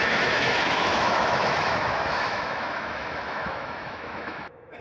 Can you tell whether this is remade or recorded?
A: remade